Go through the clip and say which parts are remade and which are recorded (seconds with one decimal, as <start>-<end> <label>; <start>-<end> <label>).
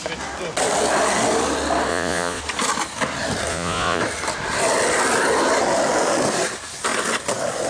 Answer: 0.0-1.9 recorded; 1.9-2.4 remade; 2.4-3.5 recorded; 3.5-4.0 remade; 4.0-7.7 recorded